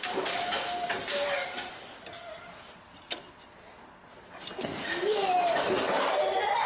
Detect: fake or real real